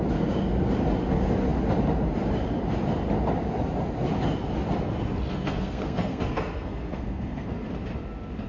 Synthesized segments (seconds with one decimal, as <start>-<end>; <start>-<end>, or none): 5.3-7.7